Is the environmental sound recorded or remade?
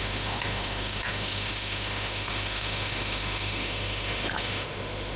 remade